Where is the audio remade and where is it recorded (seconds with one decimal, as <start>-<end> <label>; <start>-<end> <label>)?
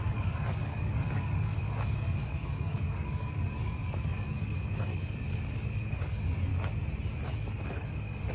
0.0-6.5 remade; 6.5-7.5 recorded; 7.5-8.3 remade